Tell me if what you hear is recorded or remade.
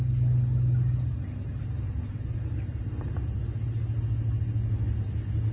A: recorded